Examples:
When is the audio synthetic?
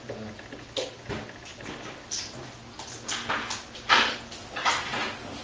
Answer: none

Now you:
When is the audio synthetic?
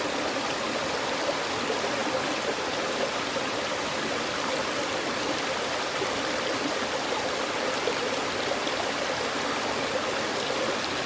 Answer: none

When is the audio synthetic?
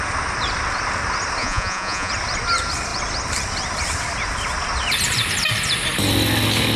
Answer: 1.4-2.1 (vocoder, Vocos)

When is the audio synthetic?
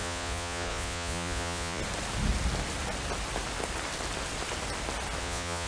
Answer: 0.0-1.8 (vocoder, Vocos); 5.2-5.7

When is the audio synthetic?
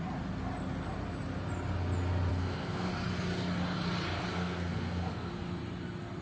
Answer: 2.3-2.9 (codec, SNAC); 4.3-5.3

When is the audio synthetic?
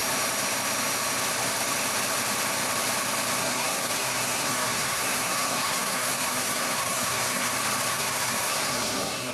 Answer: 3.4-7.5 (codec, SNAC); 7.9-9.3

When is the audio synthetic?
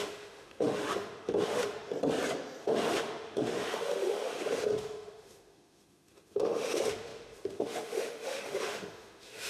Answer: 0.0-1.9 (autoencoder, DAC-VAE); 2.6-9.5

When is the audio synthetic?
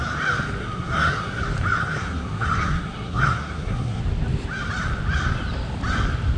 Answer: 0.6-1.4 (codec, SNAC); 1.8-4.0